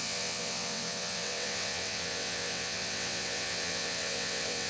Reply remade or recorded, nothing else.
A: remade